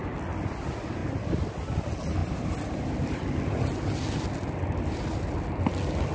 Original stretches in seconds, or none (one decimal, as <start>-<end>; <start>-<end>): 0.0-6.1